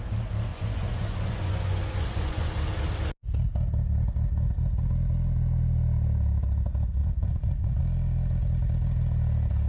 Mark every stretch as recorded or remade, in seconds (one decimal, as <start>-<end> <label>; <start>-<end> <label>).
0.0-0.5 recorded; 0.5-2.5 remade; 2.5-7.0 recorded; 7.0-7.8 remade; 7.8-9.7 recorded